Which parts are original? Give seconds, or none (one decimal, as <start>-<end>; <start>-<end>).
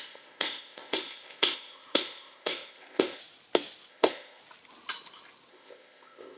3.2-3.9; 4.4-5.5